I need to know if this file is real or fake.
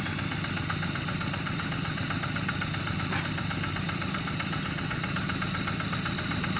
real